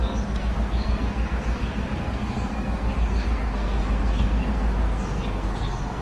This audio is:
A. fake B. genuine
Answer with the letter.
A